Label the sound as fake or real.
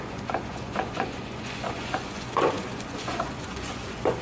fake